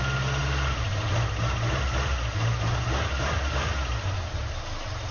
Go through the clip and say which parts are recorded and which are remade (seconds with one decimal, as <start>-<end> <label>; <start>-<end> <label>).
0.0-5.1 recorded